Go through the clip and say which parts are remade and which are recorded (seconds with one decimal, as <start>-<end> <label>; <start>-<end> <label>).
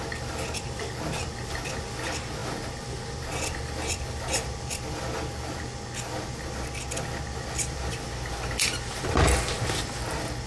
0.0-10.5 recorded